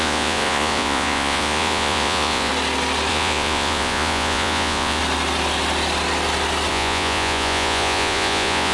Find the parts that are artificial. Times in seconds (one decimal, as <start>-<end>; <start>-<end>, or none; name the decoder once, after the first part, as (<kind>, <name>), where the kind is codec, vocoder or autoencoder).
0.0-2.5 (vocoder, Vocos); 3.1-5.0; 6.7-8.7